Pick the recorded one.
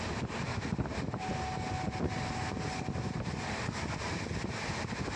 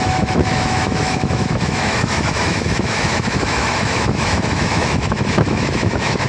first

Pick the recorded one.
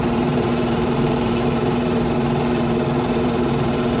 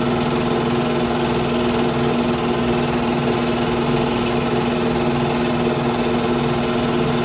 second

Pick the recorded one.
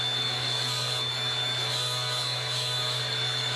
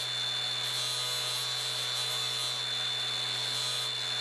second